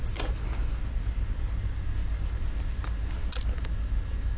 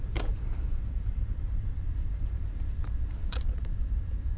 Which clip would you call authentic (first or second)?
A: first